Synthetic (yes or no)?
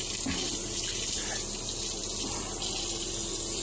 no